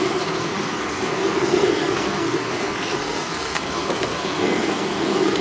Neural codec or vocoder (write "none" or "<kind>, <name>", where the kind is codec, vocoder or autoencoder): codec, SNAC